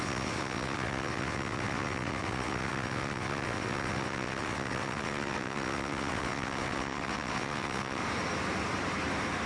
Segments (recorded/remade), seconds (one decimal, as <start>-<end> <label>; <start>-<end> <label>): 0.0-8.0 remade; 8.0-9.5 recorded